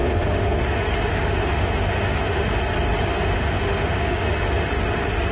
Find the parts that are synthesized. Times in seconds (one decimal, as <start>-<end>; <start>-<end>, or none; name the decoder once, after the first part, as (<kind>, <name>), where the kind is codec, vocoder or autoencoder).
0.0-0.6 (autoencoder, DAC-VAE); 1.1-2.6; 3.1-4.7